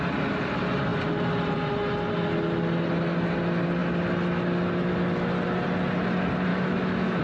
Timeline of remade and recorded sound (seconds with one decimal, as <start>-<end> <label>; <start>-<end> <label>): 0.0-6.5 recorded; 6.5-7.2 remade